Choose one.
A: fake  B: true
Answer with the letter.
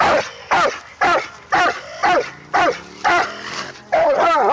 B